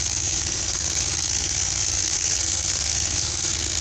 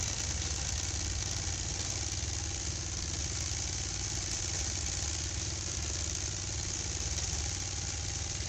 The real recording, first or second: second